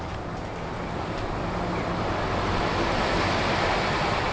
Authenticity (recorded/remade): remade